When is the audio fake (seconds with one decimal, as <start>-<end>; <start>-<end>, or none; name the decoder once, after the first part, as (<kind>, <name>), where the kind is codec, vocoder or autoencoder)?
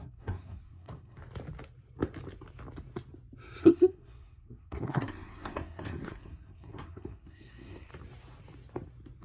0.0-1.2 (codec, SNAC); 3.6-7.9